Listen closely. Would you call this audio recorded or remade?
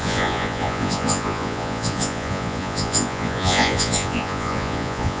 remade